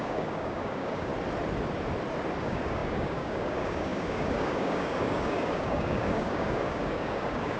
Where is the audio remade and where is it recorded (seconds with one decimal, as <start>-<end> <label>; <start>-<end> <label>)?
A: 0.0-1.1 remade; 1.1-2.4 recorded; 2.4-7.6 remade